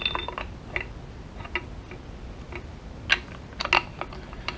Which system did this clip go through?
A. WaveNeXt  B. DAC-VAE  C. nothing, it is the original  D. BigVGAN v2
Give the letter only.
C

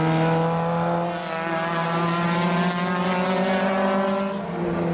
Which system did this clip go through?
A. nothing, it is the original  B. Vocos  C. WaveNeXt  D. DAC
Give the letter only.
A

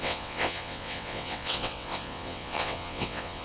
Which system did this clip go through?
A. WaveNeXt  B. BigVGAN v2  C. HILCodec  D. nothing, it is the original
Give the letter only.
A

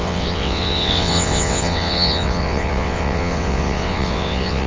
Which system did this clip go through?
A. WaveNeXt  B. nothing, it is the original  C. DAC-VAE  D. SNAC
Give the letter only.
A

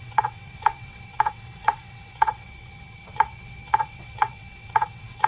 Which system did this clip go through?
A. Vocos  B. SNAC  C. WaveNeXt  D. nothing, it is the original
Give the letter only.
C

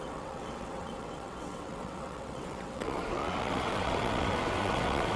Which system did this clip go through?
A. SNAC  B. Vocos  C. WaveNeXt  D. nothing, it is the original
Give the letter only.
C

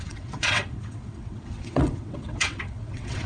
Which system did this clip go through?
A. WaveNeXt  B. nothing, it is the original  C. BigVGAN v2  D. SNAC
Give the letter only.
A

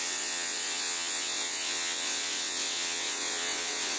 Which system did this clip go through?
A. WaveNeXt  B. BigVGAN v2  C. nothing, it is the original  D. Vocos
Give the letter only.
A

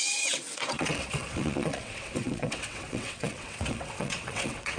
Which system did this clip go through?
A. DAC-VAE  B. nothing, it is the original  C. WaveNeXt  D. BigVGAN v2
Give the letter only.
C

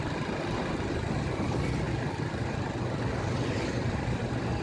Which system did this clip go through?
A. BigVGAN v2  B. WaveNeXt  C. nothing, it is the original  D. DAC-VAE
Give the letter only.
C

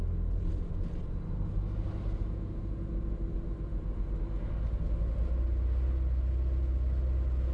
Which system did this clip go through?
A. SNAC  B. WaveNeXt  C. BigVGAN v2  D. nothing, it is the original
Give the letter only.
D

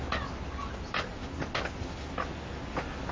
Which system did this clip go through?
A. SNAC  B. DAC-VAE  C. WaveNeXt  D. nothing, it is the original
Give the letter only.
D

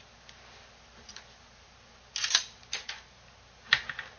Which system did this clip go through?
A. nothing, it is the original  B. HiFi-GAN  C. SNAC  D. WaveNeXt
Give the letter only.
A